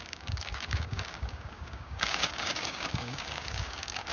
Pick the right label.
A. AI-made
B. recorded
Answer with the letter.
A